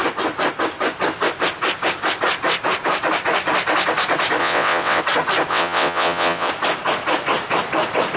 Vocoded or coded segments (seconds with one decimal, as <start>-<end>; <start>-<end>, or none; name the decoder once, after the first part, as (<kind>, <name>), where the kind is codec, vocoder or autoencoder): 4.4-5.0 (vocoder, WaveNeXt); 5.5-6.5